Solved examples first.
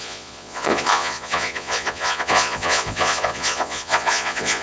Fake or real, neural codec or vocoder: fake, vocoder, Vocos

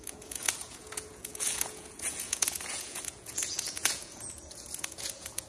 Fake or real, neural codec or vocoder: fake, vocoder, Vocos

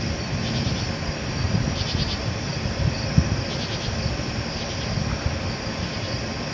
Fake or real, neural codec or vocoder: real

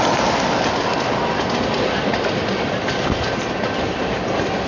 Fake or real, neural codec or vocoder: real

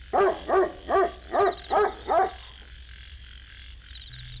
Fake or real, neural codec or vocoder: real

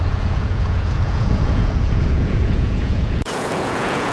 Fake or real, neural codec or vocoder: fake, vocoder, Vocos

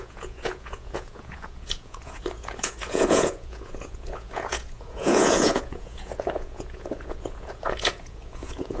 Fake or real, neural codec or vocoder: fake, vocoder, Vocos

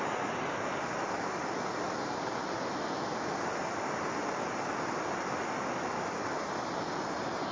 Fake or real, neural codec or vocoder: real